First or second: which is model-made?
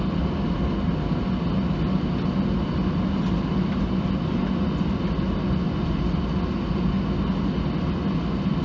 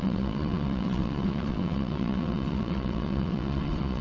second